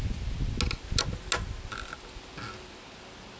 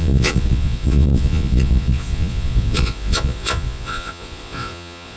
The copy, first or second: second